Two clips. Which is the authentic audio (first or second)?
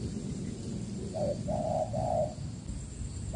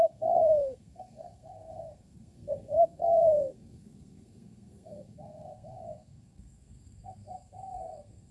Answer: first